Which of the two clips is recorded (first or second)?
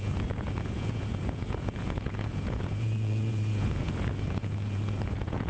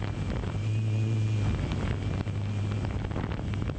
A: second